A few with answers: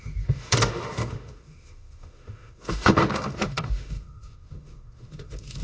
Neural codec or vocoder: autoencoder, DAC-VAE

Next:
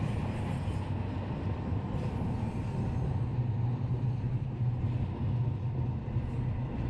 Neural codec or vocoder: none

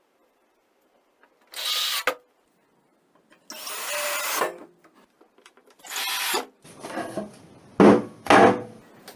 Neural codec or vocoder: none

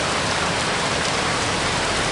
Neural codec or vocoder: vocoder, BigVGAN v2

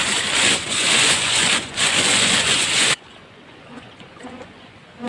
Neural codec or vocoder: vocoder, Vocos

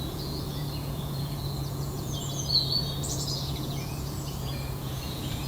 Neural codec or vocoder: vocoder, Vocos